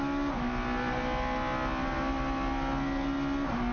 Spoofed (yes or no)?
no